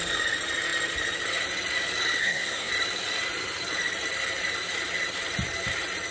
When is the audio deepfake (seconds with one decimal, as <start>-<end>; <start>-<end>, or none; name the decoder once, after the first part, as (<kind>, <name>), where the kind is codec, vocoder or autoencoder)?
2.2-2.7 (codec, SNAC)